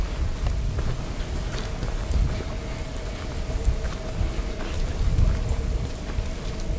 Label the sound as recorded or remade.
recorded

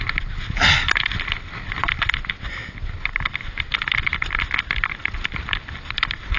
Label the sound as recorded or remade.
recorded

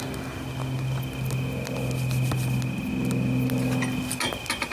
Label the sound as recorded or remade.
recorded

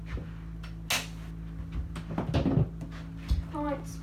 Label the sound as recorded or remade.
recorded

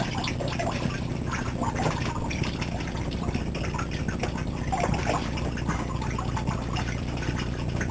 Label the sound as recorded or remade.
recorded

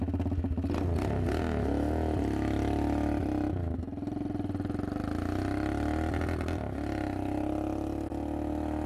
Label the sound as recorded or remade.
recorded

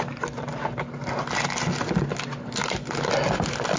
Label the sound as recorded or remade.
recorded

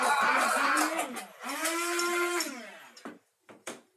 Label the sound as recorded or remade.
recorded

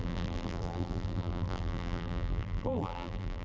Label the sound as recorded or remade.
remade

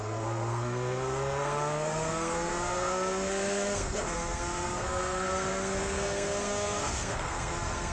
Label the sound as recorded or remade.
remade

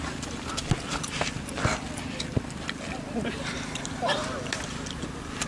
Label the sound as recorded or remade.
recorded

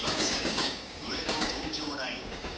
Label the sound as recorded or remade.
remade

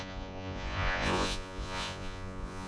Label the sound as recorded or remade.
remade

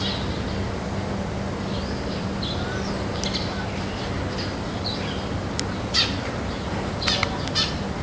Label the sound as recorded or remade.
recorded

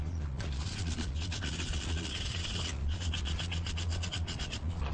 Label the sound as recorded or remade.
remade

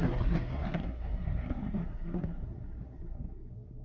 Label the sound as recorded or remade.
remade